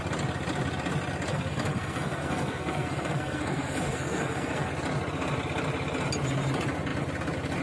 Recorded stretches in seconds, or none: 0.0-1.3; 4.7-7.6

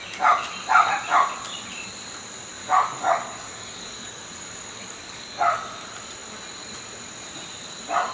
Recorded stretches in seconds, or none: 0.0-2.6; 5.6-8.1

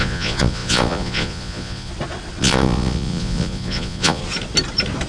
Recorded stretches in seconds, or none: 1.9-2.4; 4.2-5.1